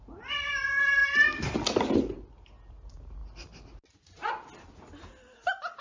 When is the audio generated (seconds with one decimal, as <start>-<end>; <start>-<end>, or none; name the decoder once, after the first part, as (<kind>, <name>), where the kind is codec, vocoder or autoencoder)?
none